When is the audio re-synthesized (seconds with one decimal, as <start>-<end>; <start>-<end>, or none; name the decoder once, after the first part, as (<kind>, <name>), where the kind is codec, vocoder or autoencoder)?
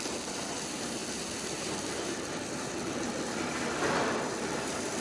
0.0-5.0 (vocoder, BigVGAN v2)